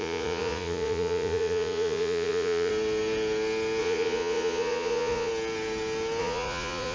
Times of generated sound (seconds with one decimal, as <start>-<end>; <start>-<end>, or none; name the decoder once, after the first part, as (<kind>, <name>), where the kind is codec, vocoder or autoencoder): 0.0-2.7 (vocoder, Vocos); 3.8-5.3; 6.2-6.9